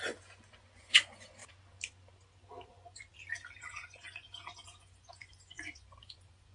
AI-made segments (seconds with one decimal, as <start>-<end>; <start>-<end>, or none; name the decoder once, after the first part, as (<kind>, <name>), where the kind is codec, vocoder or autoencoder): 0.0-1.4 (vocoder, Vocos); 2.7-3.1; 3.6-6.5